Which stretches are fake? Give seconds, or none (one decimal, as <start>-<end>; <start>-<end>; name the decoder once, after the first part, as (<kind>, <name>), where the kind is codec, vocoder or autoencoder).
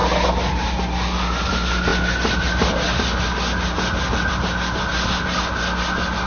none